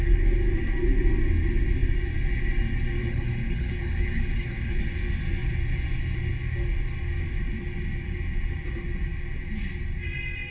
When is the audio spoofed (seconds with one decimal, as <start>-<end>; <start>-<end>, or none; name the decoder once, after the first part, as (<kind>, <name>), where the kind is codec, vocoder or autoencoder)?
3.0-4.8 (codec, HILCodec)